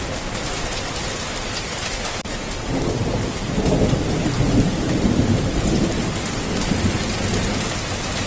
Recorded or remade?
recorded